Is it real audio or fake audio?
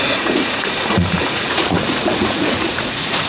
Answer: fake